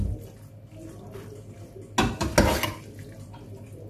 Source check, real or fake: real